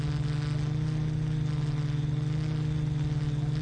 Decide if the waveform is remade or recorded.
recorded